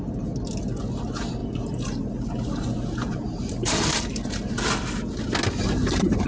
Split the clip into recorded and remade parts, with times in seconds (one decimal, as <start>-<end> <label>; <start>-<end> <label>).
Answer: 0.0-1.4 recorded; 1.4-4.7 remade; 4.7-5.6 recorded; 5.6-6.3 remade